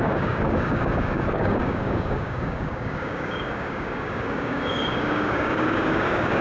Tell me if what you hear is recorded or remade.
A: remade